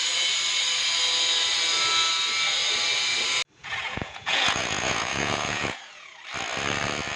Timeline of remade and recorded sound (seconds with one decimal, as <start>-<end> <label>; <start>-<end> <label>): 0.0-3.6 recorded; 3.6-6.2 remade; 6.2-7.2 recorded